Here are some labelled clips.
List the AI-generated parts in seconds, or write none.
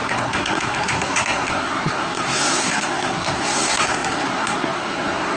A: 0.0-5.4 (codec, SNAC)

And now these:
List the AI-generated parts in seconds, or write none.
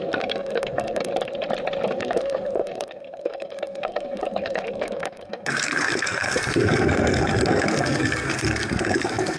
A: 0.0-1.1 (codec, SNAC); 1.9-9.4